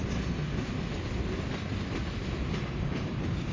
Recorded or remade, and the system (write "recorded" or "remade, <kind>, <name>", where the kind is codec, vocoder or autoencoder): recorded